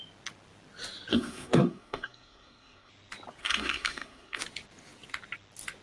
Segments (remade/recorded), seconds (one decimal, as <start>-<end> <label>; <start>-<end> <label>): 0.0-1.1 recorded; 1.1-2.9 remade; 2.9-3.4 recorded; 3.4-4.4 remade; 4.4-5.8 recorded